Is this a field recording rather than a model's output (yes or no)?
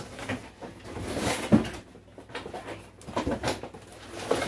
yes